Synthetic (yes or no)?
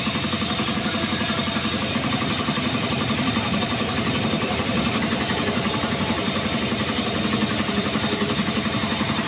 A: yes